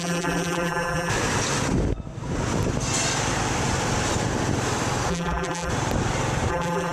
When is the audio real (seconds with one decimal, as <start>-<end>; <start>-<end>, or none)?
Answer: 1.1-5.1; 5.7-6.5